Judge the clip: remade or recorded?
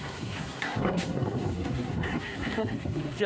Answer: remade